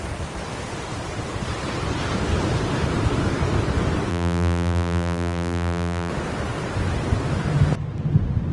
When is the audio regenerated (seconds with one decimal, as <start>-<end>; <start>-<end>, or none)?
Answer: 4.1-6.1